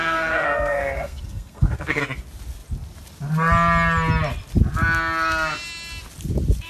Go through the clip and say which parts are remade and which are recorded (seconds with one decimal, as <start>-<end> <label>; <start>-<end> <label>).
0.0-2.0 remade; 2.0-6.7 recorded